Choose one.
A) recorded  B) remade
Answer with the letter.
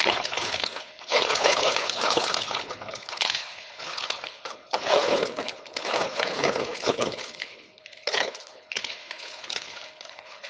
B